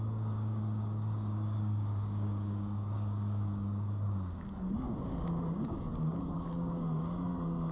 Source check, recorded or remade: remade